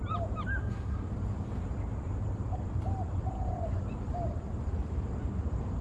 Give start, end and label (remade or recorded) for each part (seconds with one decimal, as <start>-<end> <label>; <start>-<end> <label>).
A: 0.0-0.6 recorded; 0.6-1.1 remade; 1.1-5.8 recorded

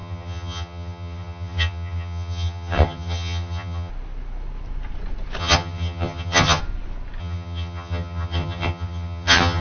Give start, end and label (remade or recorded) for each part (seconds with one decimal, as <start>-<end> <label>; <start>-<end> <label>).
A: 0.0-3.9 remade; 3.9-5.4 recorded; 5.4-6.6 remade; 6.6-7.2 recorded; 7.2-9.6 remade

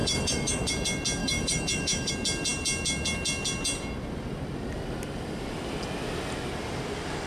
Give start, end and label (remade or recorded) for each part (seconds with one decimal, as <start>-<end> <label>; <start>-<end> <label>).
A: 0.0-0.7 remade; 0.7-1.2 recorded; 1.2-2.1 remade; 2.1-7.3 recorded

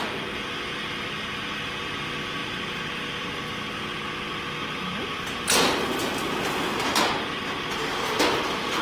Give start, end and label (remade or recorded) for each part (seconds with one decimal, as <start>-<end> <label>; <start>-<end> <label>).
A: 0.0-8.8 recorded

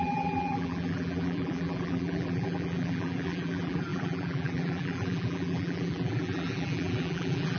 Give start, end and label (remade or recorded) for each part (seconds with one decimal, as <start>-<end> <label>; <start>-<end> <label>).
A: 0.0-7.6 remade